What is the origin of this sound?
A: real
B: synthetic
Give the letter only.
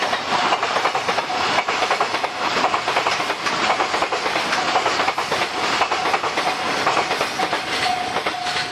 B